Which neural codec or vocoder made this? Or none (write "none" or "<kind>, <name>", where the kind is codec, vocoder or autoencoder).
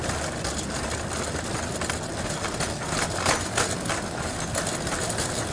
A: none